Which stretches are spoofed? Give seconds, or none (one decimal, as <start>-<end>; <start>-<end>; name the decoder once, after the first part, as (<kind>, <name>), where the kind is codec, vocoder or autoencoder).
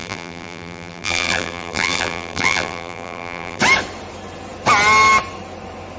0.0-3.6 (vocoder, BigVGAN v2)